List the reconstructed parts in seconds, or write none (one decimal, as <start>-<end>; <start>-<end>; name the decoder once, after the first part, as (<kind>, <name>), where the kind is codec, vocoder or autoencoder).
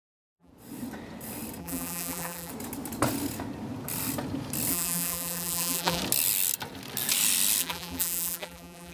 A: 0.0-0.5 (vocoder, BigVGAN v2); 1.6-2.5; 4.7-6.0; 7.6-8.9